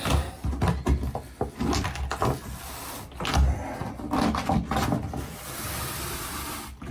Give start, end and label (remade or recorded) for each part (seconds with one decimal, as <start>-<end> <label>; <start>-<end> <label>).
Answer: 0.0-6.9 recorded